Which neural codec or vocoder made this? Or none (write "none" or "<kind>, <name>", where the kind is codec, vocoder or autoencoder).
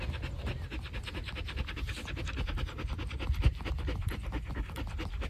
none